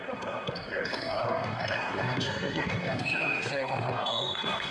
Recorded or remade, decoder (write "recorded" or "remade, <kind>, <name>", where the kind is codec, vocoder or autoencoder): remade, codec, SNAC